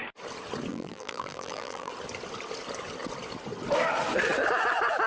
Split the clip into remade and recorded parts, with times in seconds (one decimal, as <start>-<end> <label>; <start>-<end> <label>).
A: 0.0-0.7 recorded; 0.7-1.9 remade; 1.9-5.1 recorded